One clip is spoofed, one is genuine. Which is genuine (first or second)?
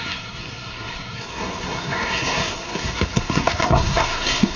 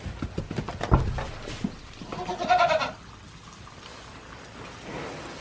second